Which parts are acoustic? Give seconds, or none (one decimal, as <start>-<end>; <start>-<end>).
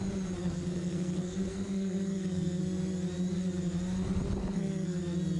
0.0-0.4; 2.6-4.4; 5.0-5.4